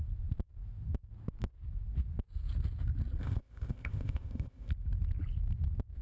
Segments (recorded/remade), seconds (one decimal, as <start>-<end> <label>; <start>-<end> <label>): 0.0-3.2 recorded; 3.2-4.7 remade; 4.7-6.0 recorded